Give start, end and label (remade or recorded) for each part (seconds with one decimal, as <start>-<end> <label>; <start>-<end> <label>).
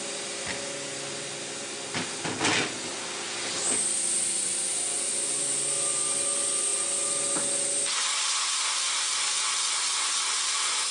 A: 0.0-10.9 recorded